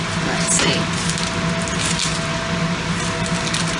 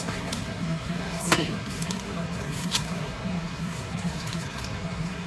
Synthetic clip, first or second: second